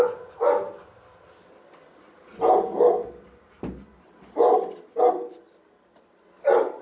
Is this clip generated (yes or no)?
no